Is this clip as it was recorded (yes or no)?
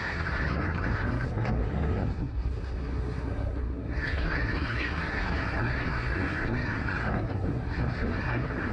no